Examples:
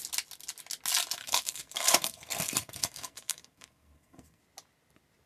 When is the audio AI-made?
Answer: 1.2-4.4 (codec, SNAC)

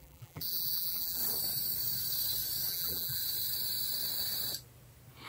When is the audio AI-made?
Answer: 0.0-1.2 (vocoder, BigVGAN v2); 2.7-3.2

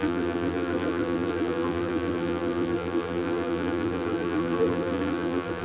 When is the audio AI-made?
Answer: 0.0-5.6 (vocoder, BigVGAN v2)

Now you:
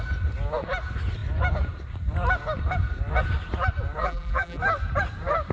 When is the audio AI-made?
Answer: 4.0-4.6 (vocoder, BigVGAN v2)

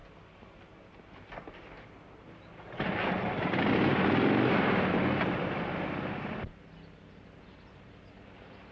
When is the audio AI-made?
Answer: none

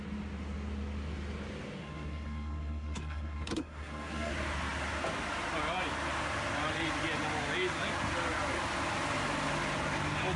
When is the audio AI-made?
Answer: 1.8-4.3 (codec, SNAC)